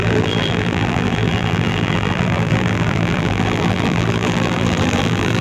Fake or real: fake